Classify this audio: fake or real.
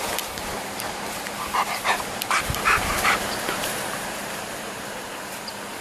fake